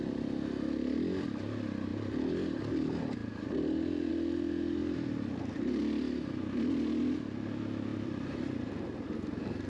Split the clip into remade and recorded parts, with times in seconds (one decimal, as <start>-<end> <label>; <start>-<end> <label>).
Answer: 0.0-1.9 recorded; 1.9-2.7 remade; 2.7-3.2 recorded; 3.2-4.1 remade; 4.1-4.8 recorded; 4.8-5.8 remade; 5.8-7.9 recorded; 7.9-8.7 remade; 8.7-9.7 recorded